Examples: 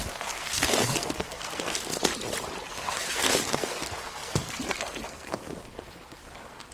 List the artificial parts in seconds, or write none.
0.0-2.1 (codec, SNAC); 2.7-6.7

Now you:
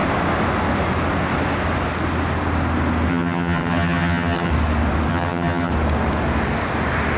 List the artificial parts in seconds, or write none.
3.1-4.5 (vocoder, HiFi-GAN); 5.1-5.7

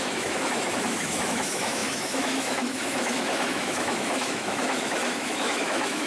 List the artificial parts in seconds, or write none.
0.0-6.1 (autoencoder, DAC-VAE)